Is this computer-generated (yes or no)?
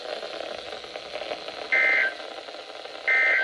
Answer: no